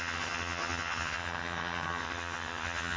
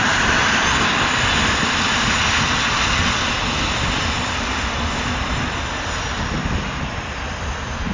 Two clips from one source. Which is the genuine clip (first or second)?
second